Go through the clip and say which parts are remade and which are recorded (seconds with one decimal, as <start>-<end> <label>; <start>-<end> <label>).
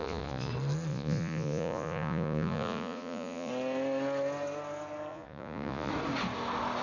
0.0-0.5 remade; 0.5-0.9 recorded; 0.9-3.5 remade; 3.5-5.1 recorded; 5.1-5.9 remade; 5.9-6.8 recorded